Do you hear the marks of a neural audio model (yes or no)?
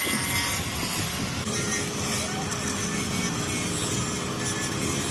no